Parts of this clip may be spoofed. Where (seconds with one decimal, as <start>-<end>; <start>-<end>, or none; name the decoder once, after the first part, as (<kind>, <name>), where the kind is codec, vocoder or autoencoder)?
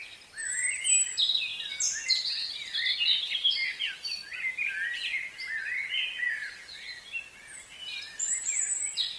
6.4-7.0 (vocoder, BigVGAN v2); 7.8-8.6